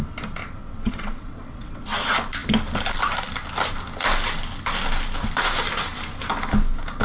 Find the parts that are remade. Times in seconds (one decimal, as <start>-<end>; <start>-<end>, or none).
0.6-1.8